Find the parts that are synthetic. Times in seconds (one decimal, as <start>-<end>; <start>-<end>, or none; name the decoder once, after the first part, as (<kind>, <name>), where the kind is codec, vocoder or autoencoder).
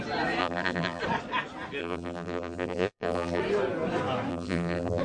0.4-1.0 (vocoder, BigVGAN v2); 1.8-3.4; 4.3-5.0